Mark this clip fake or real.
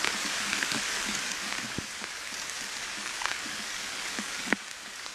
fake